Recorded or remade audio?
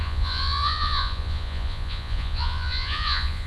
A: remade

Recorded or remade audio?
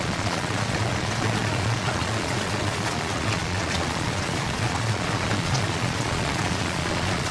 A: remade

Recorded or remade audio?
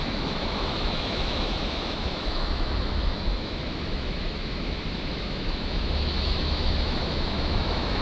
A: remade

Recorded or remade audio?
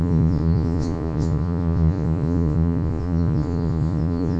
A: remade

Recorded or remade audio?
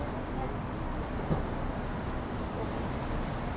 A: recorded